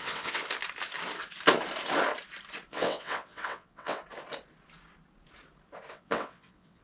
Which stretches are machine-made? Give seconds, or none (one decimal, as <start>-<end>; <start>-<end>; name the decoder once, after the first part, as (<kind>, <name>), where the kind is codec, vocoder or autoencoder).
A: 0.0-0.4 (vocoder, WaveNeXt); 2.7-4.0; 5.9-6.8